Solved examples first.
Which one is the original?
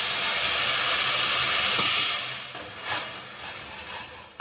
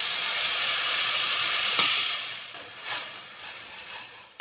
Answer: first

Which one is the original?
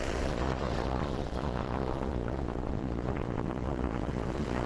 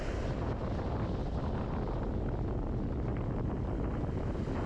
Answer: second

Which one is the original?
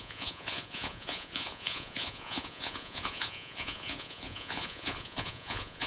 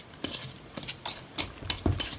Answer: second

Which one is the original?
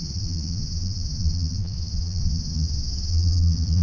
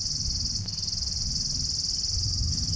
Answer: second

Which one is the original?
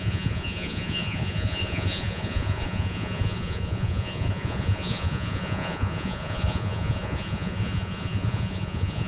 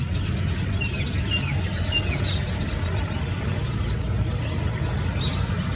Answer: second